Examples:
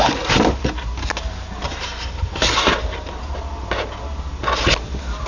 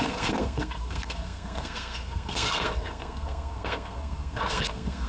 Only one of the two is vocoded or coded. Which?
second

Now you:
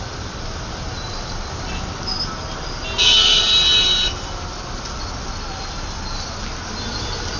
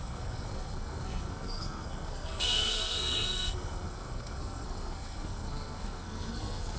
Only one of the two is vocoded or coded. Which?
second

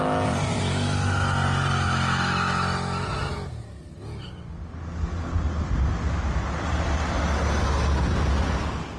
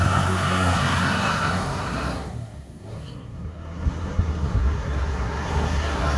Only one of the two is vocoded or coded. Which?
second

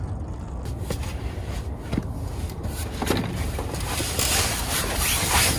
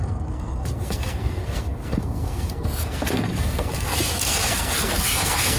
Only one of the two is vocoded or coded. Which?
second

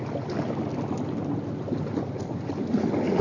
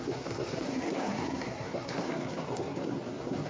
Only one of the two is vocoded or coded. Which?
second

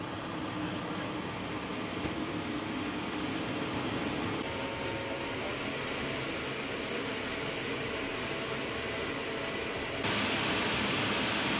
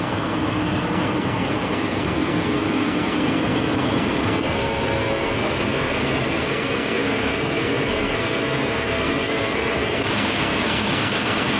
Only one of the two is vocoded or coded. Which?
second